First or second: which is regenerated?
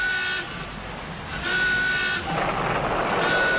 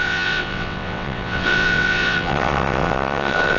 second